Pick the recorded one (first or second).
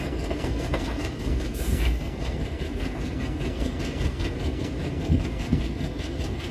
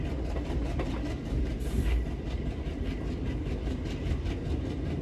second